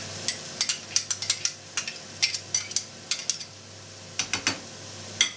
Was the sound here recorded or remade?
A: recorded